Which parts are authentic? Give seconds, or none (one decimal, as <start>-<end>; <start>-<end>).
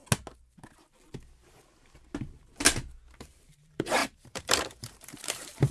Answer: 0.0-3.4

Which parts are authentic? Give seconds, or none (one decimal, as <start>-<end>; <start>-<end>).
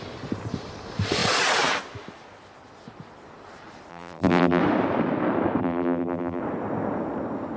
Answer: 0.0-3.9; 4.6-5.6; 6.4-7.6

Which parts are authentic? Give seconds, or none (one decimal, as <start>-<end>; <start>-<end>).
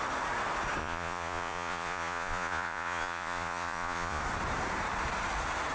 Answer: 0.0-0.8; 4.2-5.7